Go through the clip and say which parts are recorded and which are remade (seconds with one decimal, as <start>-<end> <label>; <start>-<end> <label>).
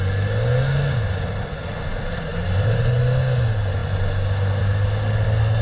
0.0-2.3 recorded; 2.3-3.0 remade; 3.0-5.6 recorded